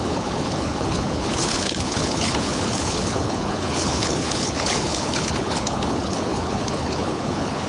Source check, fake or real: fake